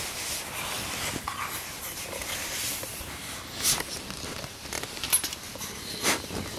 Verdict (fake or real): real